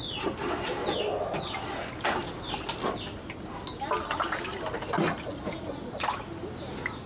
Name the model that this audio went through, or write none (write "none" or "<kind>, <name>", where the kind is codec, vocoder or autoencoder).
none